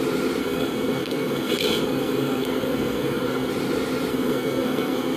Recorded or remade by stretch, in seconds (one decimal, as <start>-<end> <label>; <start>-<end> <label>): 0.0-0.4 recorded; 0.4-3.5 remade; 3.5-4.1 recorded; 4.1-5.2 remade